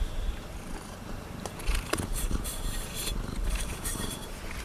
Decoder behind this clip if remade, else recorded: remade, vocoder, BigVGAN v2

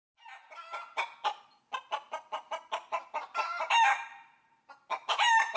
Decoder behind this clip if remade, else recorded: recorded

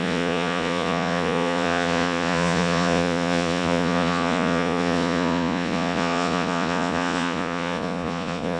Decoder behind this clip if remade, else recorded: remade, vocoder, Vocos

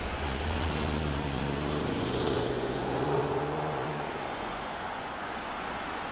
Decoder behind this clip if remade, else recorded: remade, vocoder, Vocos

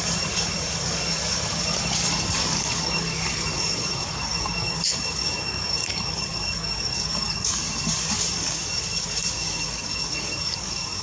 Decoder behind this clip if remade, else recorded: remade, codec, DAC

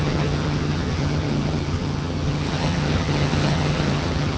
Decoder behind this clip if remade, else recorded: remade, vocoder, HiFi-GAN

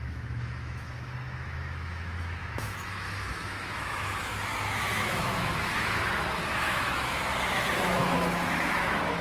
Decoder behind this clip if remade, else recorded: remade, autoencoder, DAC-VAE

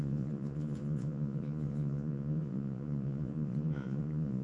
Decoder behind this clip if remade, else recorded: remade, vocoder, Vocos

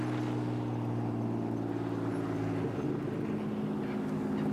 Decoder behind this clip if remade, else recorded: recorded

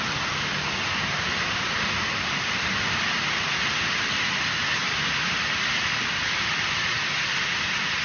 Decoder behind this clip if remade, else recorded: recorded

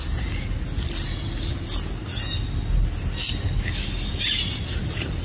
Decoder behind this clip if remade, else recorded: recorded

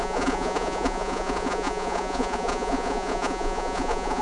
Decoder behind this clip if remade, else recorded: remade, vocoder, Vocos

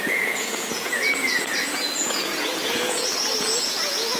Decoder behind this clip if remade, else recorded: remade, vocoder, Vocos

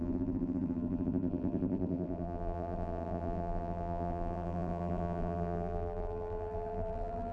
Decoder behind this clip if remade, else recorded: remade, vocoder, BigVGAN v2